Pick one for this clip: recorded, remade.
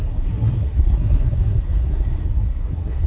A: remade